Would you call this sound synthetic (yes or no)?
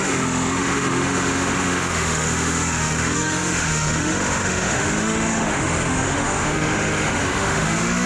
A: yes